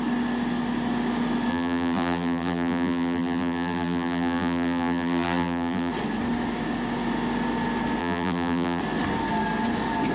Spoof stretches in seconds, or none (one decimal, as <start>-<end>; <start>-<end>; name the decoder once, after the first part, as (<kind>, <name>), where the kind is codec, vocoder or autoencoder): 1.5-5.9 (vocoder, BigVGAN v2); 8.0-8.8